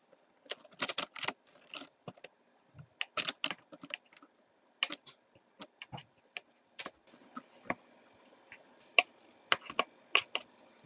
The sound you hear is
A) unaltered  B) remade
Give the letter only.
A